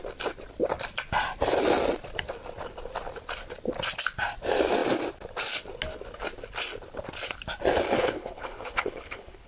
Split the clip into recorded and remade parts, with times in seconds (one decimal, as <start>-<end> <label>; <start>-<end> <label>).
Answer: 0.0-8.0 recorded; 8.0-9.5 remade